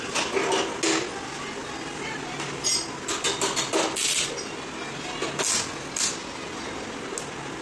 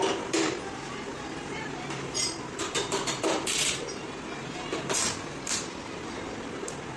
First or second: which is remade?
second